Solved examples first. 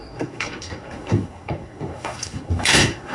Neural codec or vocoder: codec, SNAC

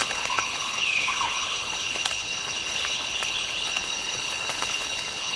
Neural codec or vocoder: codec, HILCodec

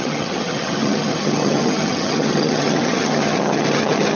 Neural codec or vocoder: vocoder, HiFi-GAN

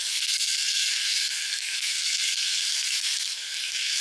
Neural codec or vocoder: codec, SNAC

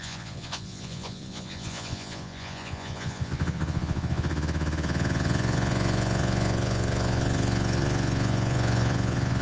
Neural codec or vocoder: vocoder, Vocos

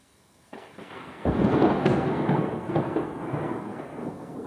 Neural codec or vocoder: codec, SNAC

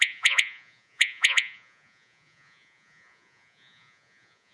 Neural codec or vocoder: vocoder, Vocos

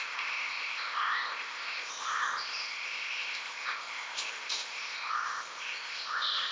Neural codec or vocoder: codec, ZipCodec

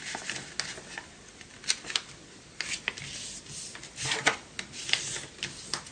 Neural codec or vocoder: none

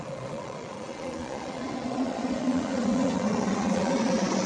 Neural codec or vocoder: vocoder, Vocos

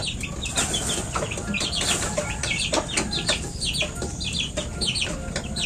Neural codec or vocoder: none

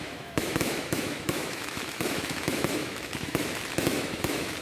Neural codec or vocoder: autoencoder, DAC-VAE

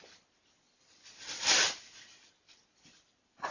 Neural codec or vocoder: none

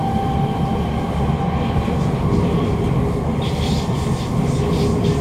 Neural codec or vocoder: none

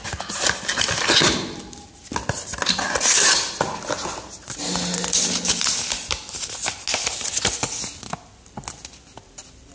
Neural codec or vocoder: none